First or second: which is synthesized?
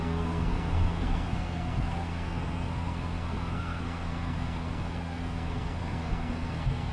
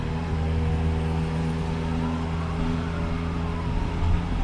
first